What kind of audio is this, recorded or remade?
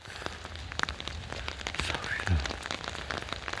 recorded